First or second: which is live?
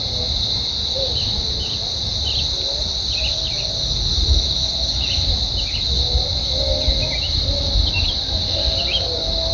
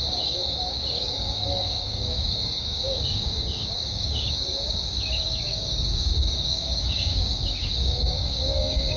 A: first